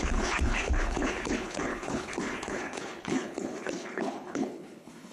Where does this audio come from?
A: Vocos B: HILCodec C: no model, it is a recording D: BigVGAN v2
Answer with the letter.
B